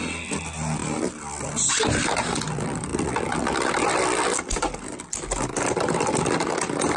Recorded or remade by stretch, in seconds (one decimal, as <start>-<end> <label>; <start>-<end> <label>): 0.0-7.0 recorded